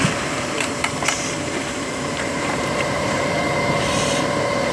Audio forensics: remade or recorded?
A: remade